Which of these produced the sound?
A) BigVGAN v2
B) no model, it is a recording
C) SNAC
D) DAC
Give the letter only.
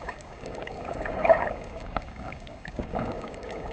D